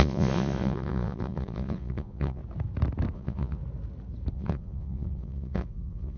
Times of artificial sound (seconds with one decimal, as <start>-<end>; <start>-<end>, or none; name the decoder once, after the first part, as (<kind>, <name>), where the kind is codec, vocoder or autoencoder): 0.0-2.4 (vocoder, Vocos); 3.1-3.6; 4.3-6.2